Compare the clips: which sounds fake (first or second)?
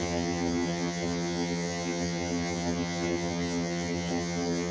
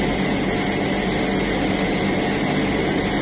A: first